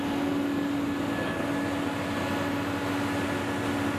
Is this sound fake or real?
real